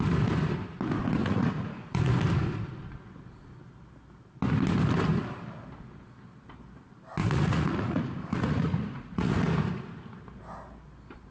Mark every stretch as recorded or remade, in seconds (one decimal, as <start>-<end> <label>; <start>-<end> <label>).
0.0-1.2 recorded; 1.2-2.1 remade; 2.1-7.2 recorded; 7.2-9.4 remade; 9.4-11.3 recorded